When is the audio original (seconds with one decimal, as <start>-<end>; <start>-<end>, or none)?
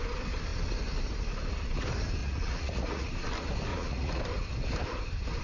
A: 0.0-2.2; 3.1-3.7; 4.2-5.4